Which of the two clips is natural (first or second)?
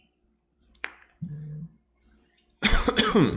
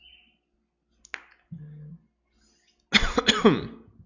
second